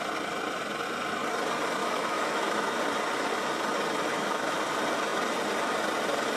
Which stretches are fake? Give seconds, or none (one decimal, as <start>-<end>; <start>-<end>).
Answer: 1.8-2.8; 4.1-4.6